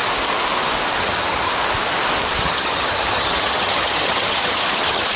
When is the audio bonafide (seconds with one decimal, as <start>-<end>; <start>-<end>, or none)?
0.0-1.0; 1.5-2.4